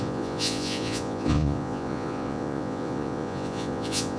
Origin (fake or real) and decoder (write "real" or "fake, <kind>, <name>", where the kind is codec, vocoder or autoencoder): fake, vocoder, Vocos